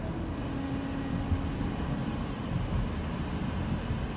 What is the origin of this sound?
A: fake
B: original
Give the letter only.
B